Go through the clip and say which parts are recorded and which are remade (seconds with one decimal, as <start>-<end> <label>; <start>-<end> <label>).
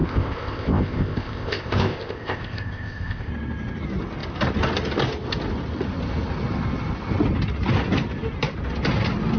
0.0-3.3 remade; 3.3-9.4 recorded